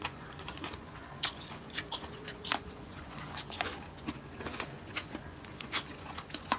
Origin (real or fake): fake